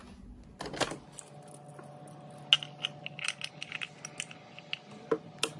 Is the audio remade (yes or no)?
no